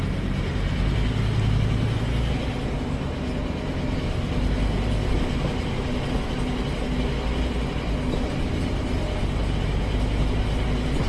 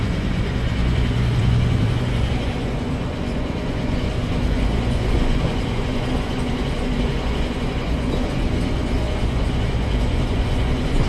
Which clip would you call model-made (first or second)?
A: second